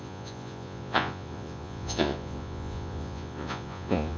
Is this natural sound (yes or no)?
no